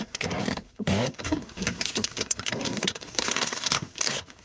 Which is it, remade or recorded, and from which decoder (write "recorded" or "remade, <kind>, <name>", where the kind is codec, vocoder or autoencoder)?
remade, codec, SNAC